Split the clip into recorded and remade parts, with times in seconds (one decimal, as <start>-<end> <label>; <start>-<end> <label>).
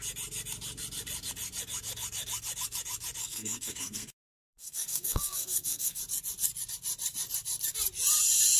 0.0-3.2 recorded; 3.2-6.0 remade; 6.0-8.6 recorded